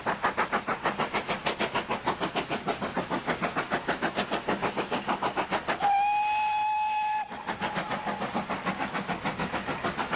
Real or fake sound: real